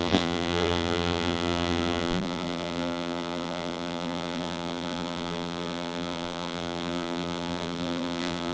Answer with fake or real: fake